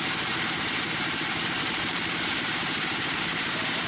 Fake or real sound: fake